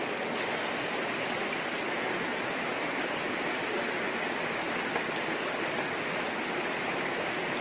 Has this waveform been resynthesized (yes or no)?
no